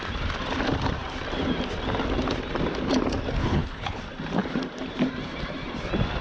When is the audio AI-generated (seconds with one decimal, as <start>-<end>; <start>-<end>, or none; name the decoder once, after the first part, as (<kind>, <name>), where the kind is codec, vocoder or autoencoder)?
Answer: 3.4-4.0 (codec, HILCodec)